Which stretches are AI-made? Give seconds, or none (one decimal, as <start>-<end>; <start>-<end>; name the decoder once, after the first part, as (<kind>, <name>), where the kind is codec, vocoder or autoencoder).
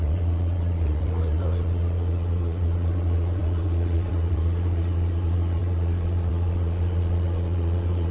0.0-8.1 (vocoder, Vocos)